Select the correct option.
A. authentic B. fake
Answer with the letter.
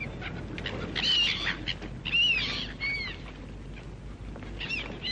A